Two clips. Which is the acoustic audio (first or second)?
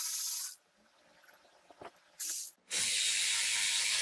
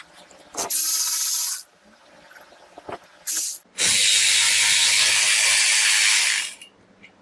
second